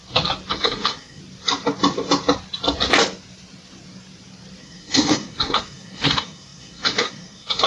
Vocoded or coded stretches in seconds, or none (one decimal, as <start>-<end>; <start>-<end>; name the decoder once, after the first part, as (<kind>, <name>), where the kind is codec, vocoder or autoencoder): 0.5-1.2 (codec, SNAC); 4.6-7.7